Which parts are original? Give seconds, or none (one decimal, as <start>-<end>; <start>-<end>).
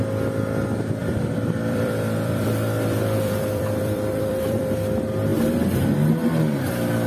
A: 0.0-1.0; 4.6-7.1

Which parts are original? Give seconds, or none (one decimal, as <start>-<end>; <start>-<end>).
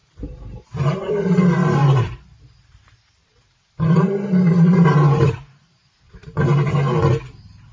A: 1.4-1.8; 6.4-7.7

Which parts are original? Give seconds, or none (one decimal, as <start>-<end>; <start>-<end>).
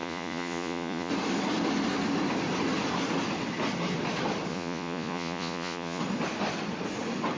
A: 1.1-4.5; 6.0-7.4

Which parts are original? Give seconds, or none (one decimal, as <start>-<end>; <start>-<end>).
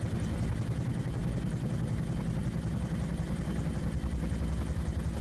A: 0.0-5.2